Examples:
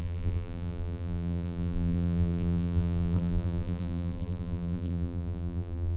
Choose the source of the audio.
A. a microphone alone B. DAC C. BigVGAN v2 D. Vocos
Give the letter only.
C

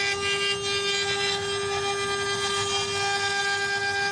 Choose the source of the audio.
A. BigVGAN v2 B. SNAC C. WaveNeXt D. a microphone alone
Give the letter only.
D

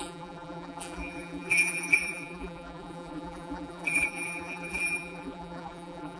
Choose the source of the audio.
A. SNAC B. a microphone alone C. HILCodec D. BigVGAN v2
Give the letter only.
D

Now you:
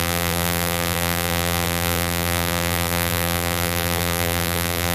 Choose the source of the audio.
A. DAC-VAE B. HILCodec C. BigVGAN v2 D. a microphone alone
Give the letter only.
C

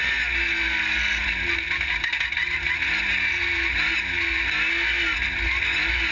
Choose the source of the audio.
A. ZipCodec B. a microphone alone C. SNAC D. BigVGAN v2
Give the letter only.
B